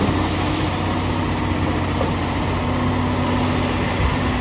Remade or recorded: recorded